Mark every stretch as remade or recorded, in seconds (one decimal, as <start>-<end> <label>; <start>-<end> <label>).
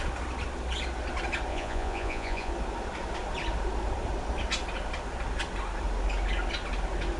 0.0-1.5 recorded; 1.5-2.5 remade; 2.5-7.2 recorded